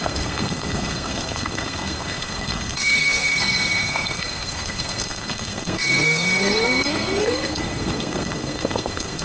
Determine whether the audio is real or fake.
fake